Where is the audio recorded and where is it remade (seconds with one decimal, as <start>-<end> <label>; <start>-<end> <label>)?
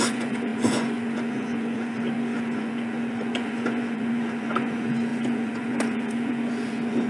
0.0-7.1 remade